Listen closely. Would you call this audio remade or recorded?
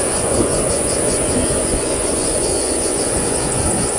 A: remade